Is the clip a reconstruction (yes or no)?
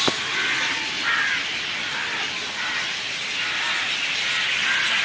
no